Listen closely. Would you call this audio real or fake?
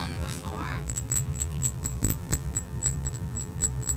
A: fake